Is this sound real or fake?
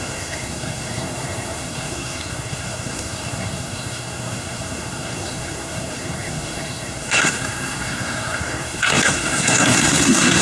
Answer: fake